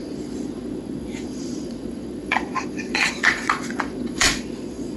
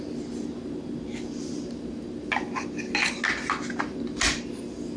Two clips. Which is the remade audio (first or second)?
first